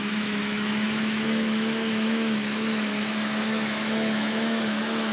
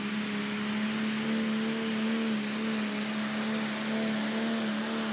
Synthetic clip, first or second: first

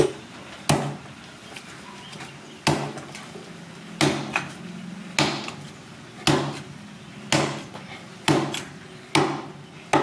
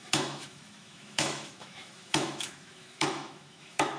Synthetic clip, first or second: second